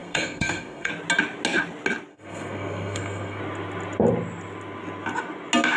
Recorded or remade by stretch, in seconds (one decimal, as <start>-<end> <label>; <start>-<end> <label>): 0.0-0.9 remade; 0.9-2.1 recorded; 2.1-3.4 remade; 3.4-5.8 recorded